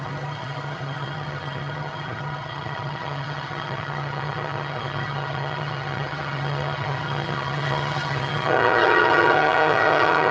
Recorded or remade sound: remade